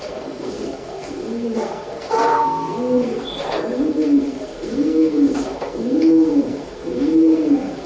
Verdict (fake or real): fake